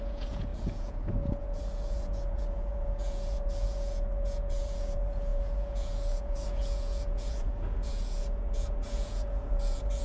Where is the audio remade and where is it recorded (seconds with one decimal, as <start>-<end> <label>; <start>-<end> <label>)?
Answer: 0.0-10.0 remade